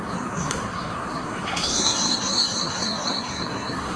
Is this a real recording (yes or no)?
no